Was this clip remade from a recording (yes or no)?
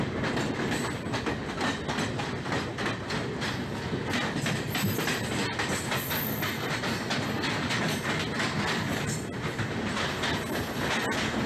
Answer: no